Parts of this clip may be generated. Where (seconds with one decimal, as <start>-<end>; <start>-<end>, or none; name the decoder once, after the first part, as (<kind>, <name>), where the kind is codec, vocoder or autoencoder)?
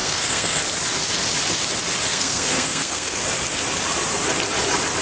0.0-0.6 (codec, SNAC); 2.1-3.2